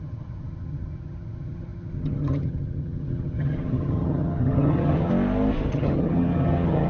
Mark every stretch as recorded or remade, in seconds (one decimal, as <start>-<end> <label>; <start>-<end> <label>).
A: 0.0-5.1 remade; 5.1-5.7 recorded; 5.7-6.9 remade